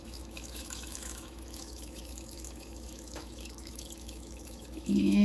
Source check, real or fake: fake